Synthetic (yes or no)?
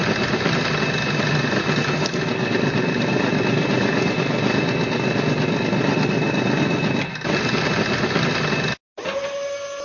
no